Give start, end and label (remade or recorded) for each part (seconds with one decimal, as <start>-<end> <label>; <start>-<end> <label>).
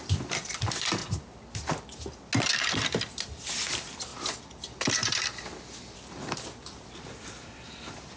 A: 0.0-1.0 remade; 1.0-3.0 recorded; 3.0-8.2 remade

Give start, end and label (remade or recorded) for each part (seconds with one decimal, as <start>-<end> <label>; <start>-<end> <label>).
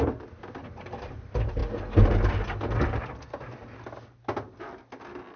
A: 0.0-5.4 recorded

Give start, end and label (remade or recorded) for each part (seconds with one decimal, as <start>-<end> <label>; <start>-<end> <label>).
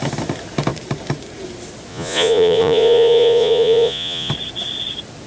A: 0.0-1.9 recorded; 1.9-4.3 remade; 4.3-5.3 recorded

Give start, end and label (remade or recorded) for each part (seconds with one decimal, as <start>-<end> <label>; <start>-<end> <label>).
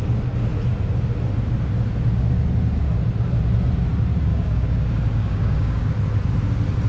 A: 0.0-4.3 recorded; 4.3-5.9 remade; 5.9-6.9 recorded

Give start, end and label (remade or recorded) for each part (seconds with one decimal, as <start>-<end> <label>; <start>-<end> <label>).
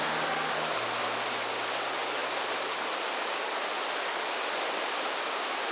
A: 0.0-5.7 recorded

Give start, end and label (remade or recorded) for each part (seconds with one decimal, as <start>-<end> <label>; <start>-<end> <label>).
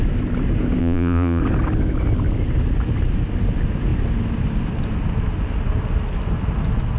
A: 0.0-0.8 recorded; 0.8-1.4 remade; 1.4-7.0 recorded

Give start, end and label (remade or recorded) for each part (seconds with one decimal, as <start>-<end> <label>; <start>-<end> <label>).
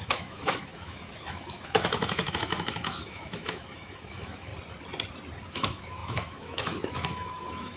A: 0.0-4.5 remade; 4.5-5.5 recorded; 5.5-7.8 remade